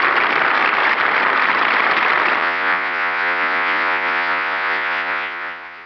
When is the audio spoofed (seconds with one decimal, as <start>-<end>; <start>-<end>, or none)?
2.4-5.9